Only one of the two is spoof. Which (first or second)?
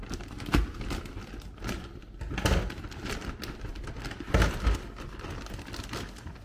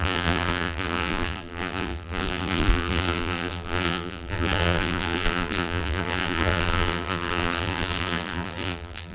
second